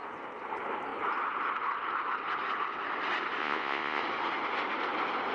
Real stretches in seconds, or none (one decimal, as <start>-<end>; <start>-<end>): 0.0-3.4; 4.0-5.3

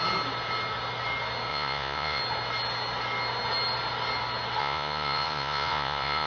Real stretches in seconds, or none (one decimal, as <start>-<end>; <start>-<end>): 0.0-1.5; 2.2-4.6

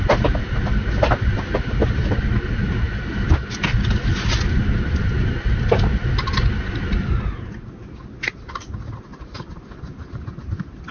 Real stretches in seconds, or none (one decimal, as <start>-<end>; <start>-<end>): 0.0-10.9

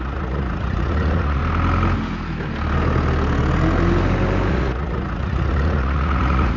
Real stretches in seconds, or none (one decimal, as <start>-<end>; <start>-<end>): 1.4-4.5

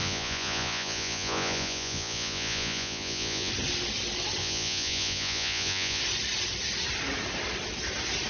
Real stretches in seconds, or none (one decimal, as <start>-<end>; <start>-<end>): 3.5-4.4; 6.0-8.3

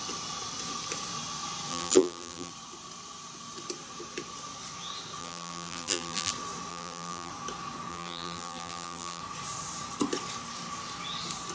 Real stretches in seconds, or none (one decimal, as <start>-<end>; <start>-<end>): 0.0-1.7; 2.5-5.2; 6.3-6.7; 7.3-7.9; 9.2-11.5